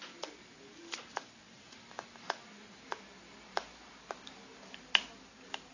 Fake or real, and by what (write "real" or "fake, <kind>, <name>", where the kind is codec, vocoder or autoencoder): real